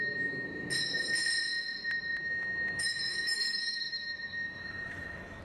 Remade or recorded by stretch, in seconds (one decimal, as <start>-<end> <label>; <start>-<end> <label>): 0.0-2.2 recorded; 2.2-5.4 remade